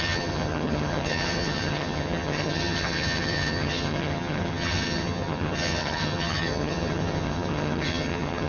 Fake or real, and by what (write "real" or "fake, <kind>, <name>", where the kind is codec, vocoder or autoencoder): fake, vocoder, HiFi-GAN